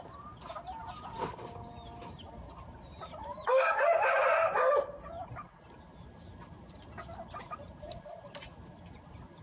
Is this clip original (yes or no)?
yes